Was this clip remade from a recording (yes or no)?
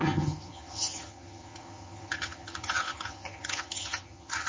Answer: yes